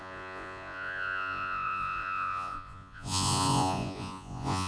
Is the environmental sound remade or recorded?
remade